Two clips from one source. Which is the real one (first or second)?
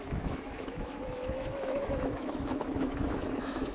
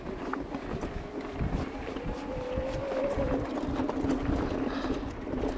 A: second